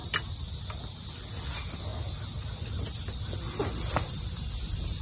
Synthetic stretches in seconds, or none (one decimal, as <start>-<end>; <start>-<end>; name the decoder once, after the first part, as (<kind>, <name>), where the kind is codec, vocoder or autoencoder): 1.9-4.5 (vocoder, BigVGAN v2)